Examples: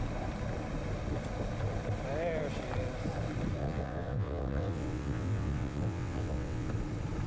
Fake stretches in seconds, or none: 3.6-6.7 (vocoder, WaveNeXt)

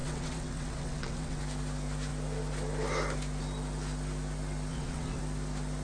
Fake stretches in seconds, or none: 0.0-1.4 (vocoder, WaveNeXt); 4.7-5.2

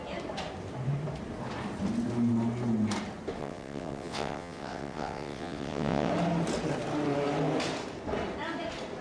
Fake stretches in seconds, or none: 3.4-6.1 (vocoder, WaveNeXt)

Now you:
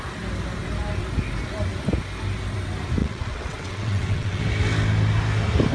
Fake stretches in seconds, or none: 3.0-4.4 (vocoder, WaveNeXt)

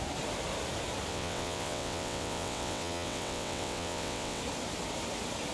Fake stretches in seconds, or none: 1.1-4.4 (vocoder, WaveNeXt)